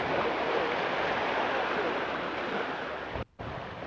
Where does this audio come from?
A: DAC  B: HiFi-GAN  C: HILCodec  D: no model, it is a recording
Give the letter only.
D